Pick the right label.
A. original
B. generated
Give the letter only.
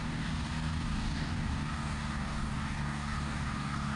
B